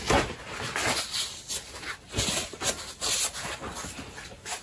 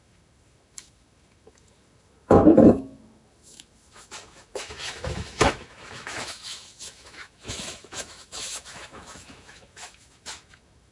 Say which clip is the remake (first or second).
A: second